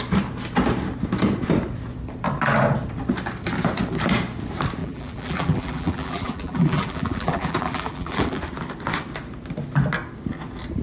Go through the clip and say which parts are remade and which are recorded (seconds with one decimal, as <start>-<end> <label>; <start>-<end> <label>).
0.0-4.8 recorded; 4.8-8.4 remade; 8.4-10.8 recorded

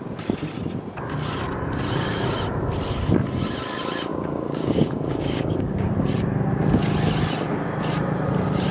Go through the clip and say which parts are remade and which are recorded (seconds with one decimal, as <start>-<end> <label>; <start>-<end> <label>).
0.0-4.1 recorded; 4.1-6.0 remade; 6.0-8.7 recorded

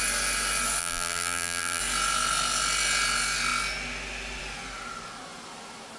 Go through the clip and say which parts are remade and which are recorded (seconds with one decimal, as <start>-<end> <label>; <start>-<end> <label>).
0.0-0.8 recorded; 0.8-1.8 remade; 1.8-6.0 recorded

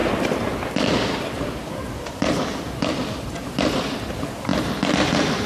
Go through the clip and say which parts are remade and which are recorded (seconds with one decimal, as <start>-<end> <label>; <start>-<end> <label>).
0.0-2.2 recorded; 2.2-5.5 remade

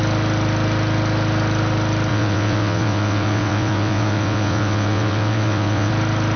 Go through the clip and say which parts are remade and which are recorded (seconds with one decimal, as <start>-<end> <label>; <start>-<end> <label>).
0.0-2.1 recorded; 2.1-5.9 remade; 5.9-6.4 recorded

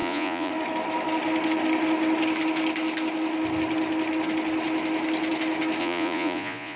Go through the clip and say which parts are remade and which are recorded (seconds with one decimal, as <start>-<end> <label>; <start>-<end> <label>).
0.0-0.5 remade; 0.5-5.8 recorded; 5.8-6.8 remade

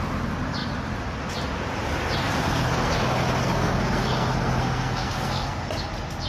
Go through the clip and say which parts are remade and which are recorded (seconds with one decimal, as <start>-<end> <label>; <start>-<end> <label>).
0.0-2.2 recorded; 2.2-3.0 remade; 3.0-3.4 recorded; 3.4-5.6 remade; 5.6-6.3 recorded

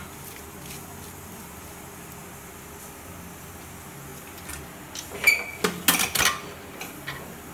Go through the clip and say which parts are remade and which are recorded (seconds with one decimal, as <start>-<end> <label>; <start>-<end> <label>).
0.0-7.5 recorded